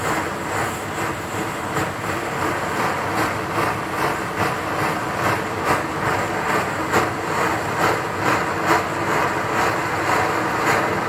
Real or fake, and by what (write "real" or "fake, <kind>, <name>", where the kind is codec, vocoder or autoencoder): real